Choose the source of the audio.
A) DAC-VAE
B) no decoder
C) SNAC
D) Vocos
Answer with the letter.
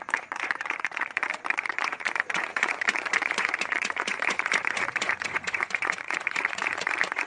D